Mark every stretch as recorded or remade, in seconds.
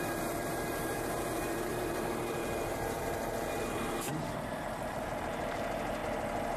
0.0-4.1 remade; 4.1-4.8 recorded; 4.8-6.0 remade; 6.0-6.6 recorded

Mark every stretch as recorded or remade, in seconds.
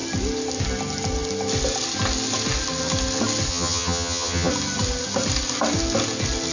0.0-3.5 recorded; 3.5-4.5 remade; 4.5-6.5 recorded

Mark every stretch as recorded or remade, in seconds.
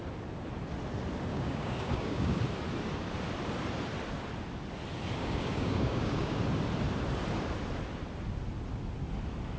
0.0-1.3 recorded; 1.3-2.4 remade; 2.4-5.2 recorded; 5.2-6.4 remade; 6.4-9.6 recorded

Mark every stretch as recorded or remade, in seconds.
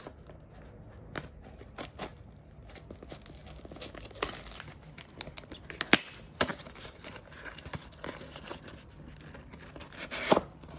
0.0-2.1 recorded; 2.1-2.6 remade; 2.6-6.6 recorded; 6.6-7.7 remade; 7.7-10.8 recorded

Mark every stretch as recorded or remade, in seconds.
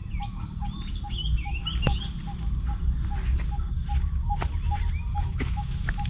0.0-5.1 recorded; 5.1-6.1 remade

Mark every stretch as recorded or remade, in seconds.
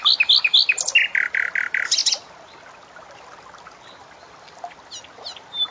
0.0-5.7 recorded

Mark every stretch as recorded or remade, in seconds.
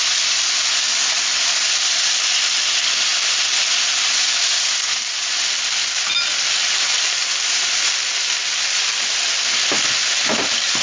0.0-10.8 recorded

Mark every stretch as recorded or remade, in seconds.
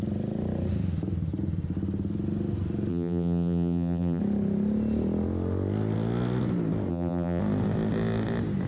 0.0-2.9 recorded; 2.9-4.2 remade; 4.2-6.9 recorded; 6.9-7.4 remade; 7.4-8.7 recorded